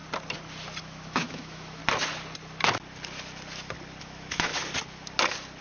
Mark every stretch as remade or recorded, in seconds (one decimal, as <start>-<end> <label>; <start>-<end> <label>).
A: 0.0-0.8 recorded; 0.8-1.8 remade; 1.8-4.0 recorded; 4.0-4.5 remade; 4.5-5.6 recorded